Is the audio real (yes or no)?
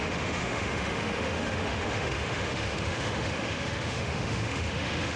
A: no